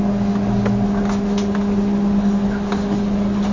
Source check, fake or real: real